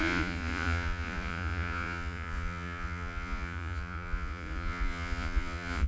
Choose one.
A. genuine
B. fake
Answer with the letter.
B